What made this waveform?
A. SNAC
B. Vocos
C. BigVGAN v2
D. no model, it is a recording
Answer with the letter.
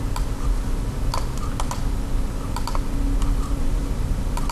D